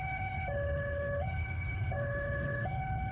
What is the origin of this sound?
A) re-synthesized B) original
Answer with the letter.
A